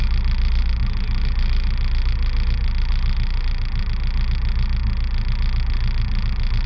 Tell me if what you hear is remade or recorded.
recorded